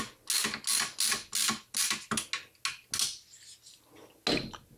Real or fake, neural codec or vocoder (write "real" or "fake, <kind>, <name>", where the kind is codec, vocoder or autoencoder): real